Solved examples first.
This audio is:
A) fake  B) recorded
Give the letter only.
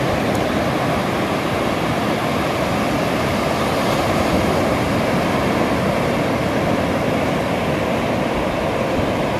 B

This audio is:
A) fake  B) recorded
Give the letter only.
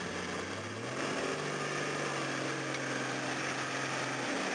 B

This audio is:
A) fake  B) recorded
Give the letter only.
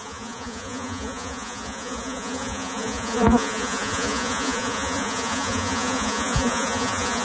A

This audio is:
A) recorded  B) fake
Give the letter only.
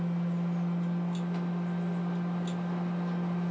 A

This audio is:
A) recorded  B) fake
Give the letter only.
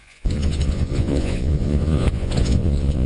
B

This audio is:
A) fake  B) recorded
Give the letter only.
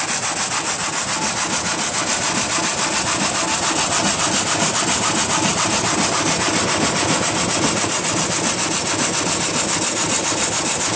B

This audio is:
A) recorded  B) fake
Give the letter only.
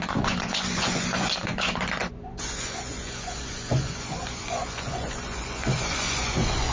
B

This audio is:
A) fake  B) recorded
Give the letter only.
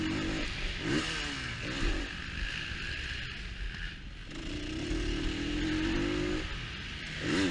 B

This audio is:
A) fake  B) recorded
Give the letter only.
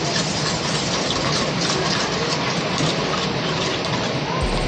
B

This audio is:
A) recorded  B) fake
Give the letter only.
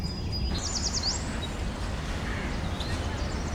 A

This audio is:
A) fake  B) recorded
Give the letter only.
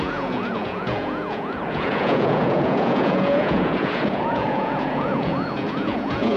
A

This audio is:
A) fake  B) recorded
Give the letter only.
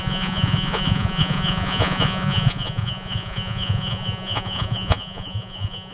A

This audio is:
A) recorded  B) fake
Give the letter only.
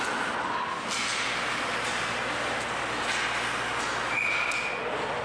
A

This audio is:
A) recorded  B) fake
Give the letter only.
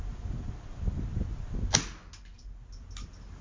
A